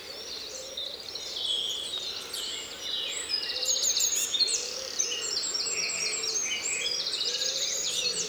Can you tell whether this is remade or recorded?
remade